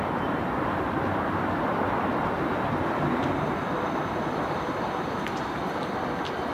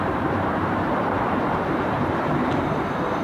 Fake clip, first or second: second